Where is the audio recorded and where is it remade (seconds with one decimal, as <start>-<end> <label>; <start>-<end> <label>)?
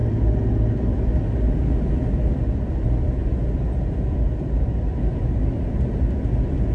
0.0-6.7 recorded